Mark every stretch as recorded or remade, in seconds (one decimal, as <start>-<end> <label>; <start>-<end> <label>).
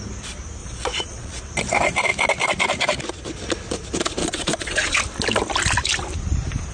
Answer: 0.0-0.6 recorded; 0.6-1.4 remade; 1.4-4.2 recorded; 4.2-5.0 remade; 5.0-6.7 recorded